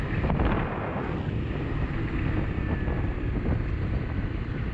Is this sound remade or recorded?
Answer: recorded